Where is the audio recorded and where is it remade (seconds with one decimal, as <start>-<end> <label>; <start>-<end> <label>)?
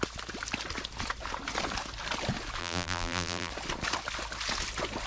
0.0-2.6 recorded; 2.6-3.5 remade; 3.5-5.1 recorded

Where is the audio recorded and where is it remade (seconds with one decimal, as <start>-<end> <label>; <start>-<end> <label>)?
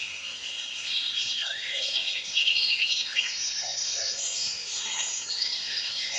0.0-6.2 remade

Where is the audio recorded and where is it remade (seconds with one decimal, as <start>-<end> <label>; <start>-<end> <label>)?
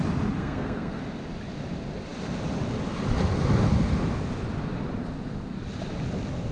0.0-0.4 recorded; 0.4-1.0 remade; 1.0-6.5 recorded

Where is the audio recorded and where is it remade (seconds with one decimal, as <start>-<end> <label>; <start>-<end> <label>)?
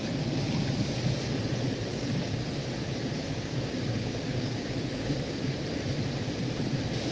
0.0-1.9 recorded; 1.9-2.5 remade; 2.5-3.2 recorded; 3.2-5.5 remade; 5.5-7.1 recorded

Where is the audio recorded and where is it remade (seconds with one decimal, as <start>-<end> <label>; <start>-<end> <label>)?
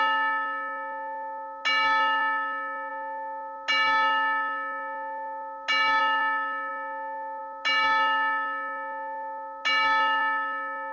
0.0-10.9 recorded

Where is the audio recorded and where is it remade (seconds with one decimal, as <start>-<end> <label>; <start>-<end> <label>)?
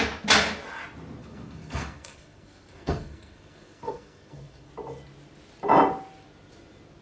0.0-1.2 recorded; 1.2-4.7 remade; 4.7-7.0 recorded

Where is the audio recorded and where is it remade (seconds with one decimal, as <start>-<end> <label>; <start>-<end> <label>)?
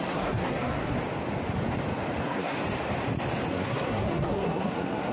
0.0-1.0 remade; 1.0-2.2 recorded; 2.2-2.6 remade; 2.6-3.5 recorded; 3.5-5.1 remade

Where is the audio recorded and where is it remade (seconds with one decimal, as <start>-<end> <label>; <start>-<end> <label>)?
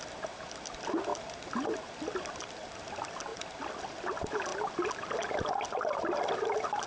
0.0-6.9 recorded